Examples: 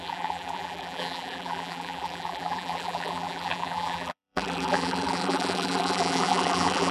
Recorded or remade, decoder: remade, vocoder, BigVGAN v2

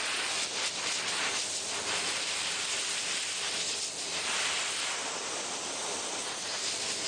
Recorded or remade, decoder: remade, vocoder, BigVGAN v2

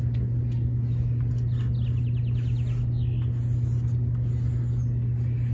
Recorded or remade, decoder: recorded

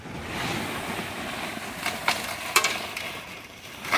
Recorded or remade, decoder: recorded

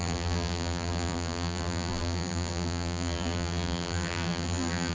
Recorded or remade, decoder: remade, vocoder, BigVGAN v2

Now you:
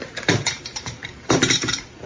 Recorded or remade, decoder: remade, vocoder, BigVGAN v2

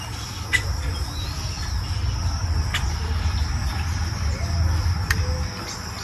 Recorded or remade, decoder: recorded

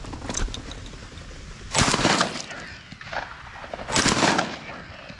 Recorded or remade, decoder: recorded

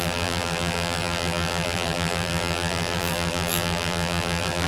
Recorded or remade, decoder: remade, vocoder, BigVGAN v2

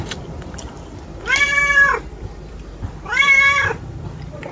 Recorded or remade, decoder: remade, vocoder, BigVGAN v2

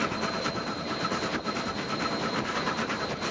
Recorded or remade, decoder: remade, vocoder, BigVGAN v2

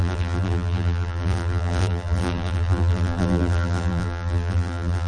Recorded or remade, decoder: remade, vocoder, BigVGAN v2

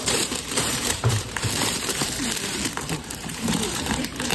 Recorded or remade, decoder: remade, vocoder, BigVGAN v2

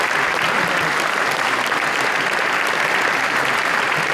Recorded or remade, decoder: recorded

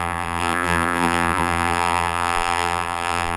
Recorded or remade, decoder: remade, vocoder, BigVGAN v2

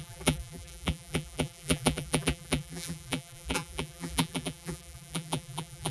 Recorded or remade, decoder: remade, vocoder, BigVGAN v2